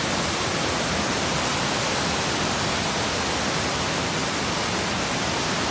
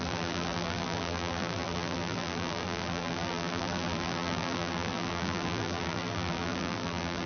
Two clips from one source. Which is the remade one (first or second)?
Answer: second